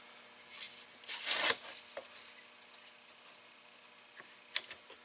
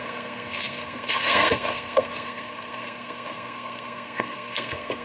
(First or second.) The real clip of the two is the first